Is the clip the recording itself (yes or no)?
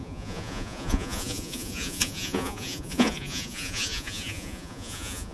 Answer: no